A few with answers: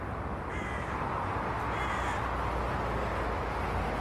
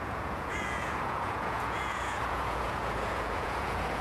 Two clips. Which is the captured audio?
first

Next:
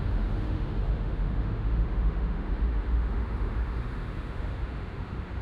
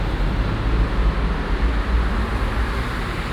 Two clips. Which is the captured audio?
second